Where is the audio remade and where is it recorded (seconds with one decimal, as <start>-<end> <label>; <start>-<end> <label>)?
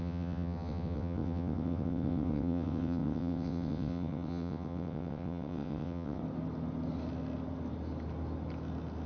0.0-6.2 remade; 6.2-9.1 recorded